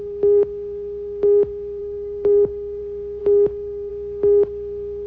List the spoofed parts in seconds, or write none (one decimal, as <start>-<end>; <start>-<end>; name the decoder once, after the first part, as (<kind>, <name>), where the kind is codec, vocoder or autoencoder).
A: 1.8-2.8 (autoencoder, DAC-VAE); 3.2-3.9